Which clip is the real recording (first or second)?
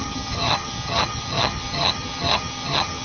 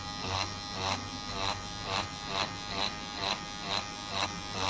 second